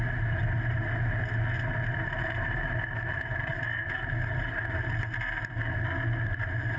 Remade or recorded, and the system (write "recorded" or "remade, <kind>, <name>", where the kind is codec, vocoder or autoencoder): recorded